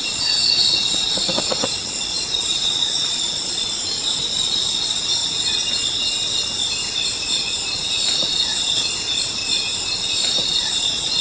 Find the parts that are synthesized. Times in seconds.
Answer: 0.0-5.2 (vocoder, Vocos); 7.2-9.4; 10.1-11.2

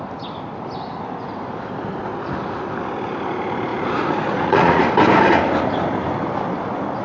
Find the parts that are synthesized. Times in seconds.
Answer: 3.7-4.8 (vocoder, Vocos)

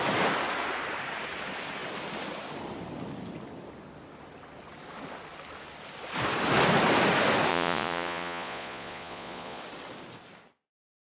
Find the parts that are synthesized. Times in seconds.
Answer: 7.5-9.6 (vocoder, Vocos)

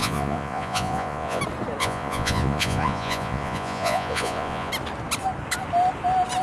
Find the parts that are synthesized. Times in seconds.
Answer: 0.0-1.4 (vocoder, Vocos); 1.8-4.7

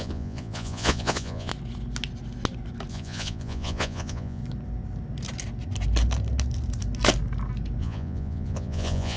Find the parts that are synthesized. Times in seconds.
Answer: 0.0-1.5 (vocoder, Vocos); 2.9-4.4; 7.8-9.2